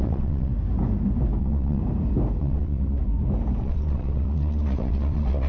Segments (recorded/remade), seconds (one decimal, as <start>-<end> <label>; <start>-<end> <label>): 0.0-0.5 remade; 0.5-1.4 recorded; 1.4-1.8 remade; 1.8-2.4 recorded; 2.4-3.0 remade; 3.0-3.6 recorded; 3.6-5.5 remade